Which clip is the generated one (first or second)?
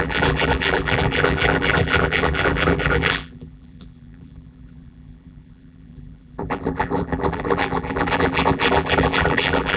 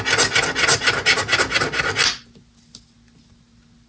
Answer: first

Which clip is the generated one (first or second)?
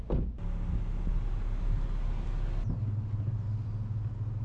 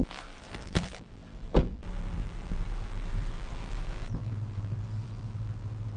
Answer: second